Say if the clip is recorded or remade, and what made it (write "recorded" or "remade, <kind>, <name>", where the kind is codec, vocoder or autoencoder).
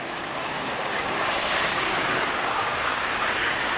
remade, codec, DAC